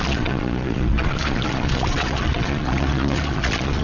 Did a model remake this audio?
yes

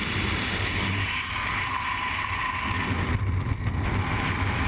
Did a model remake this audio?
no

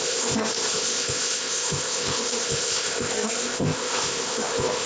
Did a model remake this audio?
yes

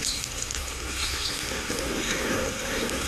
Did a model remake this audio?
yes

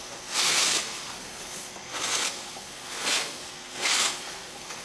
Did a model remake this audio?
yes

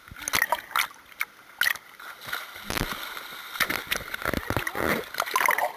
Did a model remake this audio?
no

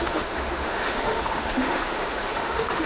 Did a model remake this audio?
yes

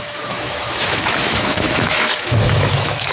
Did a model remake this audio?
yes